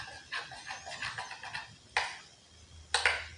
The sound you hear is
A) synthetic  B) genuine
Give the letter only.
B